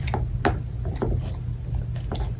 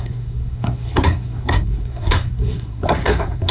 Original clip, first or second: first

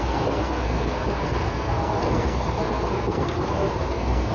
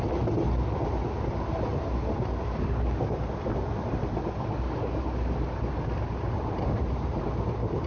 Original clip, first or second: second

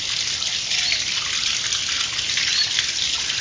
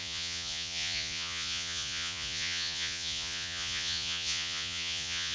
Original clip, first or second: first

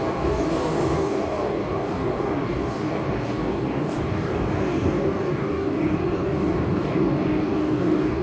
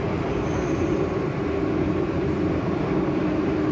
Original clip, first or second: second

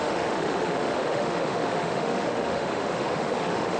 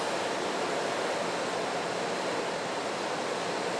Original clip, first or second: second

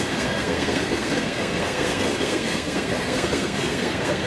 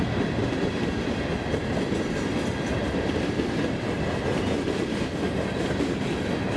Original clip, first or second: second